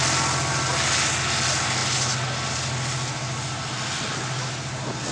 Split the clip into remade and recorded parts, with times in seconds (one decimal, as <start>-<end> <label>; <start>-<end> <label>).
0.0-5.1 recorded